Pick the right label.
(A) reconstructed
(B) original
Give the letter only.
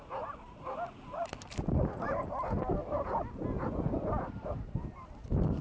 B